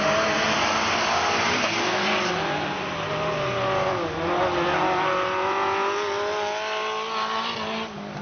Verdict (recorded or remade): recorded